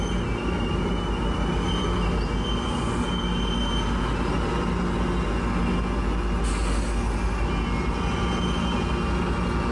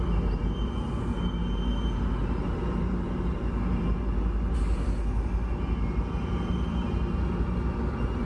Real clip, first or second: first